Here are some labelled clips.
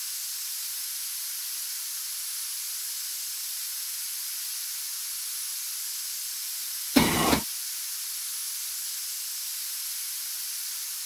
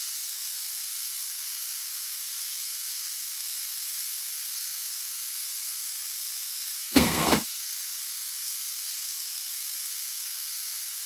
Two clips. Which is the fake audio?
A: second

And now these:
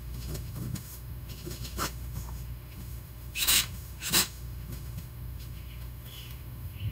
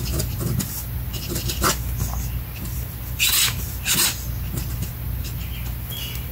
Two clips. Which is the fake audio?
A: first